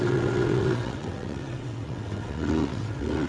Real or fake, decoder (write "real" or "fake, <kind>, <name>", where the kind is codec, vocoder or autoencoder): fake, vocoder, WaveNeXt